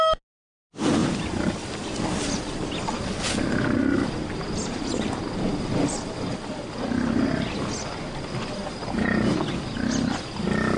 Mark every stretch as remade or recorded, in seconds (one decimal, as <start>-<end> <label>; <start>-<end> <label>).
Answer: 0.0-10.8 recorded